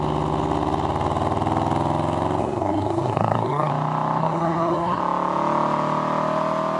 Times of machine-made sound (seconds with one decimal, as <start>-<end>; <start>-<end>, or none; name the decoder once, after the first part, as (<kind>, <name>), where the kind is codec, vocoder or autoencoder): 2.4-3.7 (codec, SNAC); 4.2-5.0